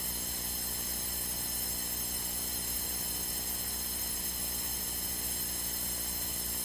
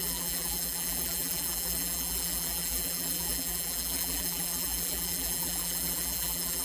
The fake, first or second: second